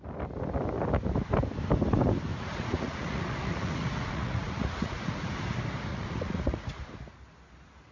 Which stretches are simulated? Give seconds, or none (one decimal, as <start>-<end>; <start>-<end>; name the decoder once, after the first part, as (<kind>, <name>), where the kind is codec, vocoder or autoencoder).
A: 2.3-5.3 (vocoder, Vocos); 5.9-6.7